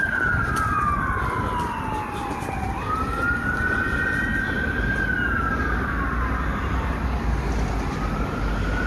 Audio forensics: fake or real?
real